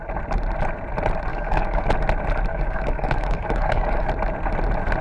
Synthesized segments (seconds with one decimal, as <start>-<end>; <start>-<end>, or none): 1.3-1.9; 2.5-4.1